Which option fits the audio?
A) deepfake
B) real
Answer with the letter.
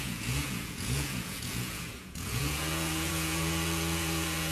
A